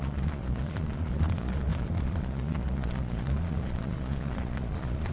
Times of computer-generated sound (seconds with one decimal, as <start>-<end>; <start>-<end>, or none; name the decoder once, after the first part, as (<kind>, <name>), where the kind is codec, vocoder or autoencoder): 0.0-5.1 (vocoder, Vocos)